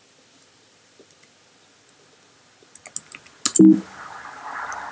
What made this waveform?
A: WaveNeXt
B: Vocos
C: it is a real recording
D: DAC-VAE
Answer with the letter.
C